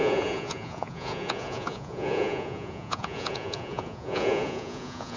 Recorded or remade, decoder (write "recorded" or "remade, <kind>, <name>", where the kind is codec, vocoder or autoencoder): remade, vocoder, Vocos